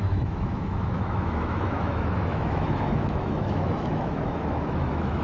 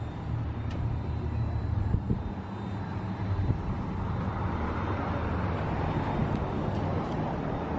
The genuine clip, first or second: second